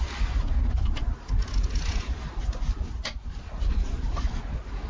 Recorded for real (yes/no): yes